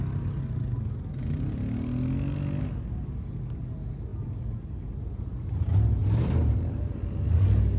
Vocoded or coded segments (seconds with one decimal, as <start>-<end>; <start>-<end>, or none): none